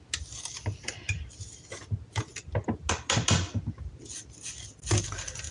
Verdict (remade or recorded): recorded